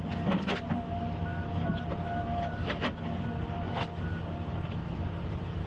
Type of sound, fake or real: real